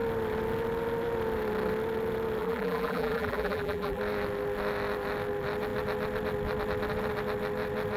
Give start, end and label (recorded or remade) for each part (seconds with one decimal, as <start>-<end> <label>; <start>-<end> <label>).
0.0-2.4 recorded; 2.4-4.0 remade; 4.0-8.0 recorded